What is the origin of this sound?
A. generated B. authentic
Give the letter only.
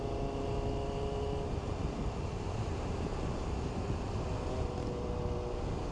B